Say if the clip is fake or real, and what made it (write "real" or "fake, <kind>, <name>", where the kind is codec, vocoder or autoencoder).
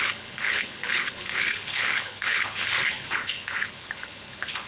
fake, codec, HILCodec